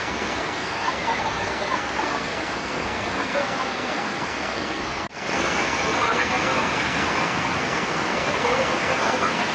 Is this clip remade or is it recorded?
remade